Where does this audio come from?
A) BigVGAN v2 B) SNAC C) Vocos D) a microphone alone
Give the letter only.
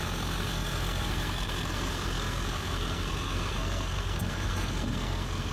B